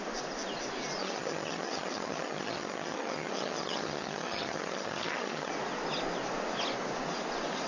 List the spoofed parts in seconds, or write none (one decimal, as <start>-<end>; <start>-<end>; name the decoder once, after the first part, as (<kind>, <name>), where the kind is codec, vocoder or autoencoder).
1.0-5.5 (vocoder, HiFi-GAN)